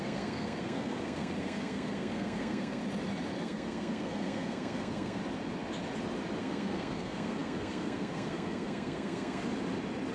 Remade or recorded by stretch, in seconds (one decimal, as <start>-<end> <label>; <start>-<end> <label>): 0.0-2.8 remade; 2.8-3.4 recorded; 3.4-5.2 remade; 5.2-6.4 recorded; 6.4-9.4 remade; 9.4-10.1 recorded